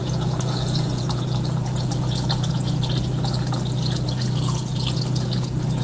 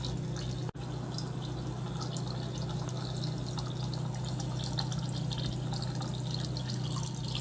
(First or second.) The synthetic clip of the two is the first